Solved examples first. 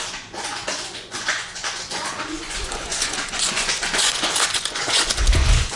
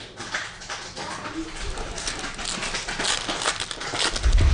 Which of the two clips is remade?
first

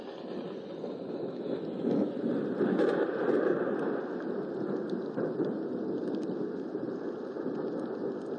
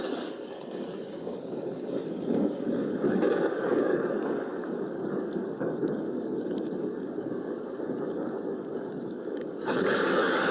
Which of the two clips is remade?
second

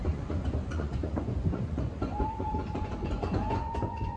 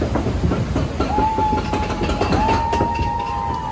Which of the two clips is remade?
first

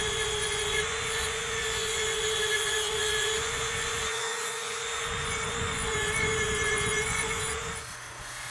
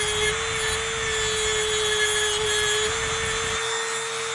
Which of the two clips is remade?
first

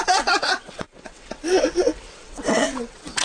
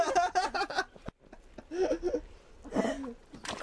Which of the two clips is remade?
first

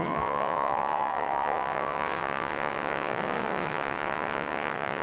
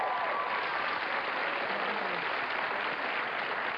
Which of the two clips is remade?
first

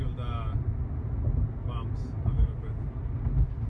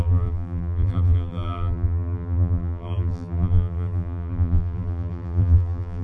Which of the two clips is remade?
second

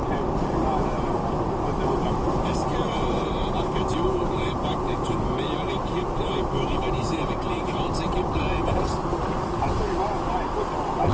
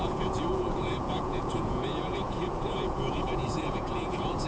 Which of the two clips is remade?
second